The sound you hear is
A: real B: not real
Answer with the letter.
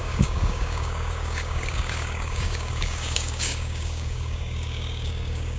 B